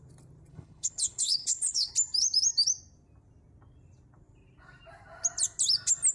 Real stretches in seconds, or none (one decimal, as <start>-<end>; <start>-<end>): 0.0-0.5; 1.9-6.1